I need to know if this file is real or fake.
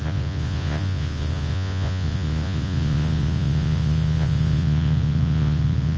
fake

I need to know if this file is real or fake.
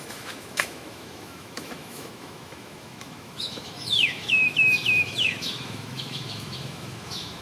fake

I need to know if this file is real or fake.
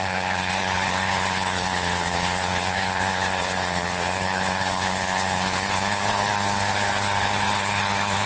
fake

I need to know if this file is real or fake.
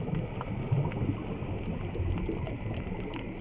real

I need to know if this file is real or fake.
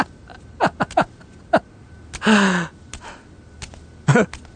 real